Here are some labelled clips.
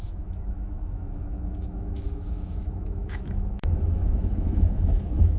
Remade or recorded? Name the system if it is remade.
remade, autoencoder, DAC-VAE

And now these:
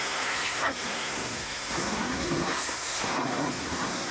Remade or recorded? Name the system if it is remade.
remade, codec, SNAC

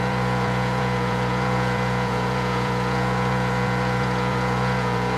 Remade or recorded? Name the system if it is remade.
remade, vocoder, Vocos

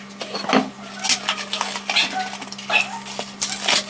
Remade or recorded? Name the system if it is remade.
recorded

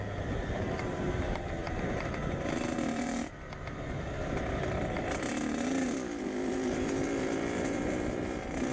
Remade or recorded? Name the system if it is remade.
remade, vocoder, BigVGAN v2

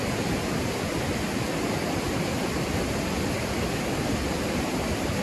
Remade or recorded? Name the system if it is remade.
recorded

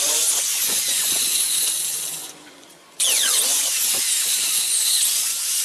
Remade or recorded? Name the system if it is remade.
remade, vocoder, Vocos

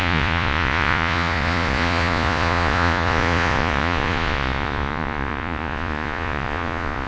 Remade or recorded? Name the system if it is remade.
remade, vocoder, Vocos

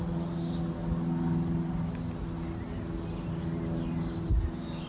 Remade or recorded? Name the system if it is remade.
recorded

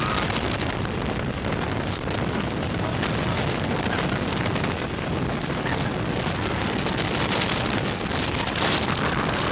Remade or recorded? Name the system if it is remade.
recorded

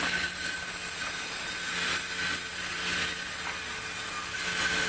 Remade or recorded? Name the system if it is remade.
recorded